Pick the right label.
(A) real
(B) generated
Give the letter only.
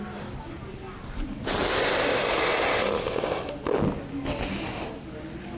A